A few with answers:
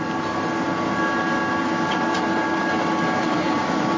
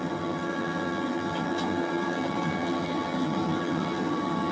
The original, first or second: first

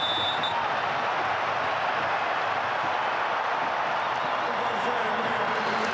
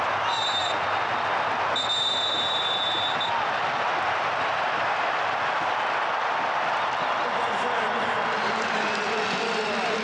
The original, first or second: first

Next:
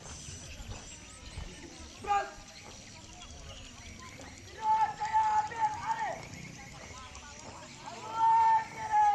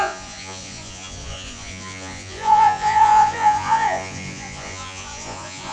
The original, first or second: first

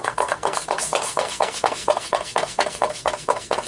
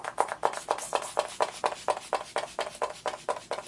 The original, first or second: second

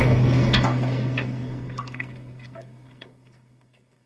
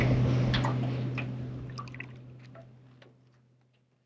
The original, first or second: second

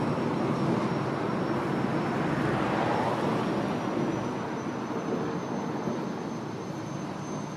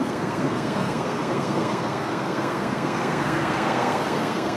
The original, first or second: first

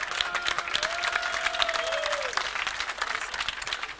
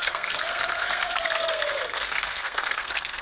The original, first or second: first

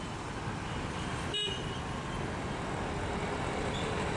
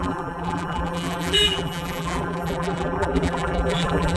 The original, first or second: first